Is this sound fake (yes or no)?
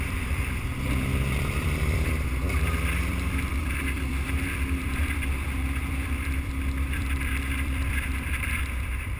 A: yes